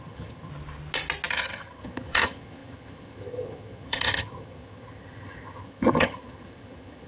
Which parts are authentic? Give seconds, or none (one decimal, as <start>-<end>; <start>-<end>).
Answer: 0.5-1.3

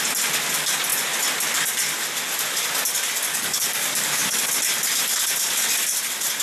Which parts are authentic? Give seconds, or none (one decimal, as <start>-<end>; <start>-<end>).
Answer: 0.0-3.3; 4.5-6.4

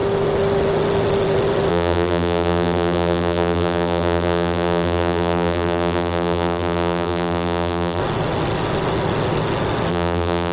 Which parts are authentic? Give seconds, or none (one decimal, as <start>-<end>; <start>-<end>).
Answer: 0.0-1.7; 8.0-9.9

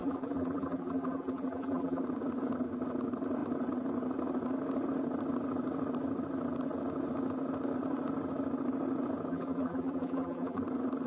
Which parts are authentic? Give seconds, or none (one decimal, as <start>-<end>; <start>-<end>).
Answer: 2.0-9.3; 10.6-11.1

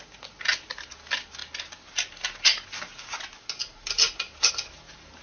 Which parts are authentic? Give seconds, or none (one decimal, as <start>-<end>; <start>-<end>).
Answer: 0.0-5.2

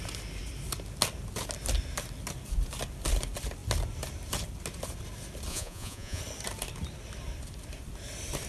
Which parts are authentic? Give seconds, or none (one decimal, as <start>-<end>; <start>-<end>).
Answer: 0.0-5.5; 6.2-8.5